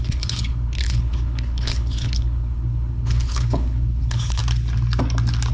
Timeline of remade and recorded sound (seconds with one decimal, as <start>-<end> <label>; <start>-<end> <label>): 0.0-4.4 remade; 4.4-5.5 recorded